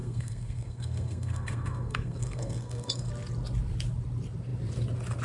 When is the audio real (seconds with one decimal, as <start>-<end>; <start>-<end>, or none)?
3.1-5.2

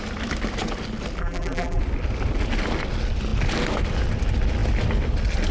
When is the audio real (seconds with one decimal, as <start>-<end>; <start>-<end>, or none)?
0.0-1.2; 1.8-5.5

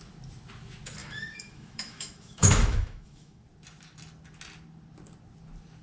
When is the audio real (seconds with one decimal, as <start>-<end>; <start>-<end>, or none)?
0.0-1.0; 3.4-5.8